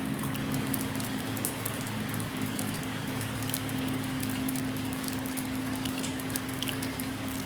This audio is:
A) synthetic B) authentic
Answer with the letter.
A